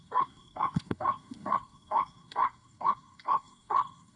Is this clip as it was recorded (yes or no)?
no